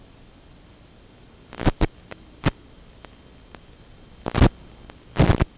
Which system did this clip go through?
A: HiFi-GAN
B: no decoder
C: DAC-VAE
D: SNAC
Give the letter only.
B